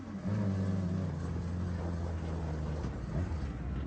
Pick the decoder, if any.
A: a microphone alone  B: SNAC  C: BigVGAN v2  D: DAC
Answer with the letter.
A